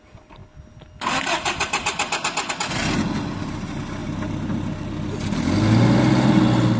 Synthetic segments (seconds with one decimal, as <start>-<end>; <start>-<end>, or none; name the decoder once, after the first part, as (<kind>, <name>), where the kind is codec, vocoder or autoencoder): none